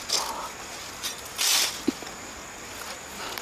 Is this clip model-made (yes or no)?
no